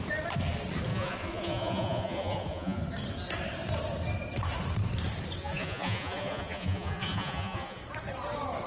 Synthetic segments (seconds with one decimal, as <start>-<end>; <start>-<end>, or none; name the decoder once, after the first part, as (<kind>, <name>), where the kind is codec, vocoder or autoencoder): 0.9-2.8 (vocoder, Vocos); 5.4-7.8